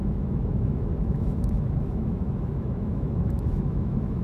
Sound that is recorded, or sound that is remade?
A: remade